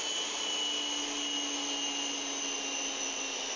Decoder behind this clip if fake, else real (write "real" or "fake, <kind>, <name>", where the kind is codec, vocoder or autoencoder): real